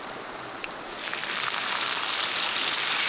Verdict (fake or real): real